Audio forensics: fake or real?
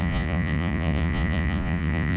fake